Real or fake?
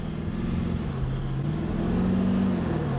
real